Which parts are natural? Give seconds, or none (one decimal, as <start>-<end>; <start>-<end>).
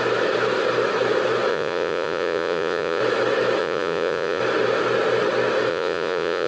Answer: 0.0-1.5; 3.0-3.6; 4.4-5.7